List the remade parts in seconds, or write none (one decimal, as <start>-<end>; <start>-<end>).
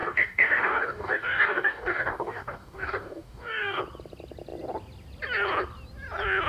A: 0.0-3.8